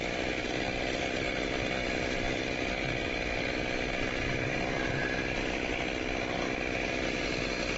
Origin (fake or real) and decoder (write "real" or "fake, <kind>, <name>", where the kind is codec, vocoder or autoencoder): real